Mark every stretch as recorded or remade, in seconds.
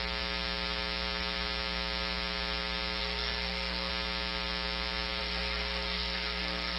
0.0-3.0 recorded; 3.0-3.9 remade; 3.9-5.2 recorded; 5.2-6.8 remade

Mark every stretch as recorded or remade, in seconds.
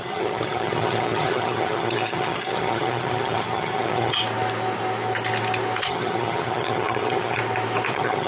0.0-4.2 remade; 4.2-5.8 recorded; 5.8-7.4 remade; 7.4-7.9 recorded; 7.9-8.3 remade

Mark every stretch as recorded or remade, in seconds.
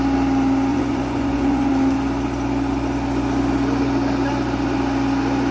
0.0-0.7 recorded; 0.7-1.7 remade; 1.7-5.5 recorded